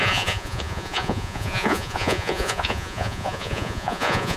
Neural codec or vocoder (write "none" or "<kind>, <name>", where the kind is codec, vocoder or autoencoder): vocoder, Vocos